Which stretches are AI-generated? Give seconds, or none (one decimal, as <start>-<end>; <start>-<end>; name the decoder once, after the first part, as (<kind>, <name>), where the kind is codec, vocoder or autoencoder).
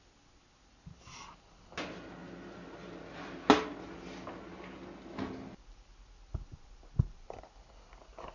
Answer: none